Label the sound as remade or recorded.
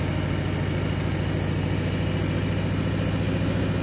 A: recorded